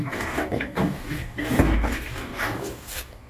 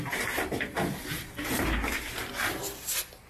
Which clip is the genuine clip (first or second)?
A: second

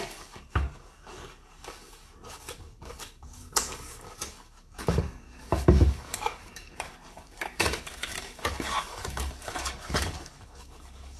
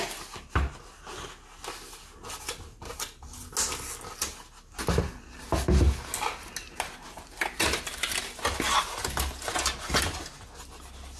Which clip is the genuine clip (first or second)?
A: second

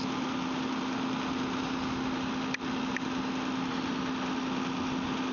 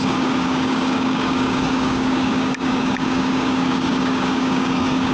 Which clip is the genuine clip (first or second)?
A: first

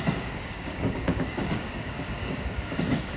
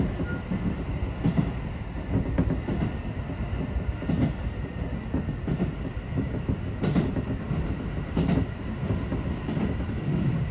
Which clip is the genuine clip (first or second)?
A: second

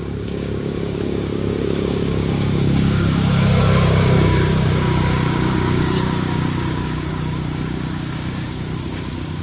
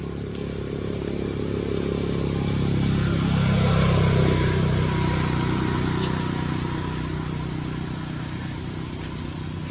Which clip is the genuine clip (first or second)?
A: second